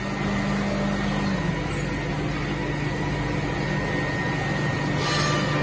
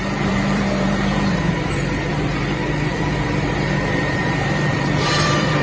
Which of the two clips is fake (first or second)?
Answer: second